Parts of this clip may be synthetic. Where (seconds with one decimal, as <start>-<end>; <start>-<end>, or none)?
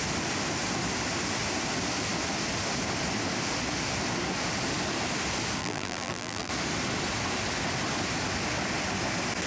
5.6-6.5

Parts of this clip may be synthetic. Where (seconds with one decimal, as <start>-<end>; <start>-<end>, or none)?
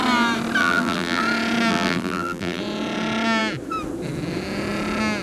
0.6-1.2; 1.7-2.6